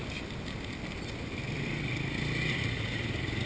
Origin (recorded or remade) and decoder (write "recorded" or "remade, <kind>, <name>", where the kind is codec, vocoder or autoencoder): recorded